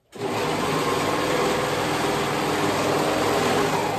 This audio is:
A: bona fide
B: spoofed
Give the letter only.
A